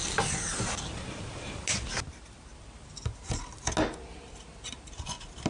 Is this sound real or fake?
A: real